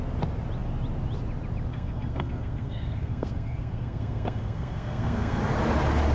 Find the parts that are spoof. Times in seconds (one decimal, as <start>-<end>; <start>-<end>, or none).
1.7-5.4